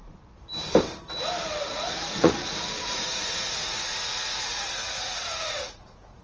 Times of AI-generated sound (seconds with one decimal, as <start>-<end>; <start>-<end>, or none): 1.7-6.2